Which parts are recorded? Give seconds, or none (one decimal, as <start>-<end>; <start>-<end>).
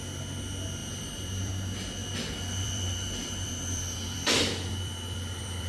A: 0.0-0.8; 1.5-2.0